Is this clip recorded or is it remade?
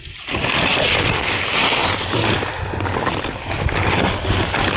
recorded